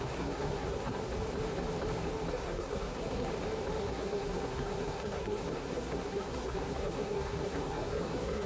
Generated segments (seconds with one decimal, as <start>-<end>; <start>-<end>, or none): 0.0-1.0; 2.3-3.3; 3.8-8.5